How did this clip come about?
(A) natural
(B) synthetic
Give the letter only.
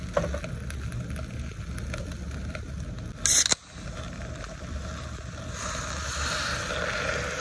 A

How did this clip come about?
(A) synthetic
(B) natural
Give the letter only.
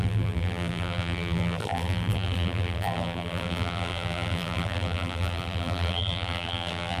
A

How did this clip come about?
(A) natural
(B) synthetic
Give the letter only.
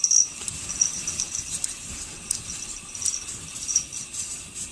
A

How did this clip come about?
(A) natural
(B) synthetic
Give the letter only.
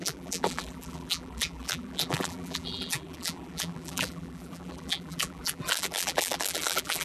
B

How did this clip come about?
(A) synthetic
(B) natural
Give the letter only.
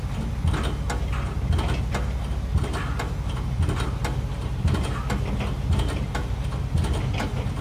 B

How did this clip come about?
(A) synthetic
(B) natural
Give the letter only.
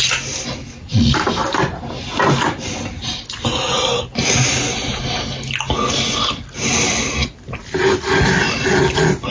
B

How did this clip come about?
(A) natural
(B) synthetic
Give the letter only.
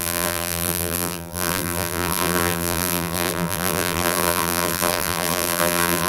B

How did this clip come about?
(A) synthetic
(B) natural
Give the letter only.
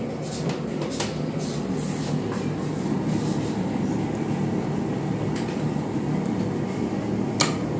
B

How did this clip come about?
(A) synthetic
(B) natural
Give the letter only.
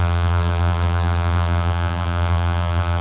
A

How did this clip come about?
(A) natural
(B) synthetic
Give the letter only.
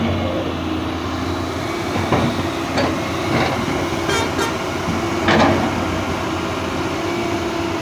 A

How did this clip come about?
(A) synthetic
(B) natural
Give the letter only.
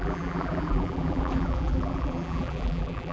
A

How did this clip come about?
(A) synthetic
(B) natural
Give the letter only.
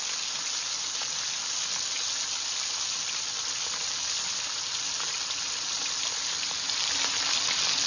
B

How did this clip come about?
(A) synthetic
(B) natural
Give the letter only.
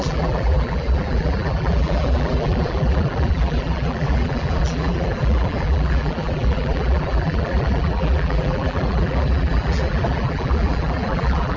A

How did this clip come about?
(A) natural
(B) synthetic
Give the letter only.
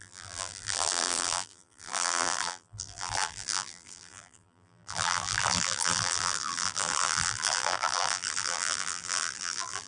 B